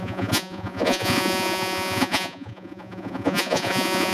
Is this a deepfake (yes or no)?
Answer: yes